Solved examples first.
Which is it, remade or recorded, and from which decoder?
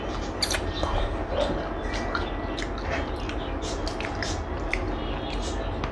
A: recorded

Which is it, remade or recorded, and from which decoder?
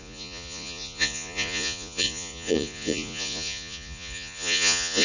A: remade, vocoder, Vocos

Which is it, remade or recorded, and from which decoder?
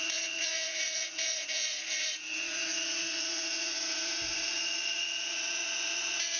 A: remade, vocoder, Vocos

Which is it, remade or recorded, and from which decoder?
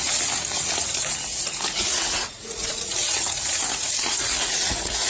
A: remade, vocoder, Vocos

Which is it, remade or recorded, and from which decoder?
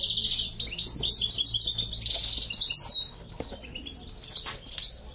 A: recorded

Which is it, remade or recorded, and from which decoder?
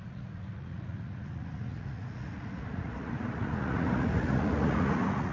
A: remade, vocoder, Vocos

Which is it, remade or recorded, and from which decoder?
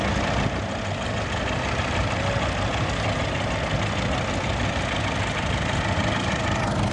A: recorded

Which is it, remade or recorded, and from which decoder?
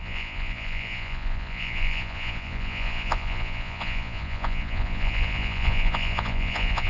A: remade, vocoder, Vocos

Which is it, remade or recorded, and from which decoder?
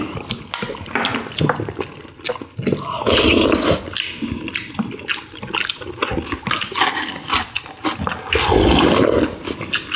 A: recorded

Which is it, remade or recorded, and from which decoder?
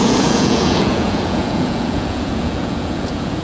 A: remade, vocoder, Vocos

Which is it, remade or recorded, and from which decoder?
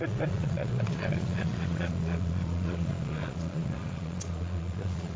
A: remade, vocoder, Vocos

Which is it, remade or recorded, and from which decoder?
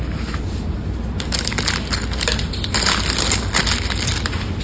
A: recorded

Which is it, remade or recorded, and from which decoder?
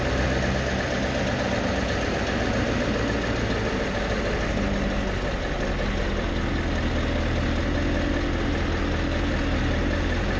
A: recorded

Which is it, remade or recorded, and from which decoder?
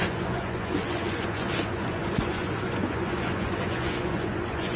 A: remade, vocoder, Vocos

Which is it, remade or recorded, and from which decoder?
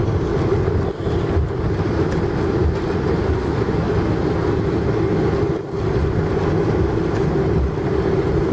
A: recorded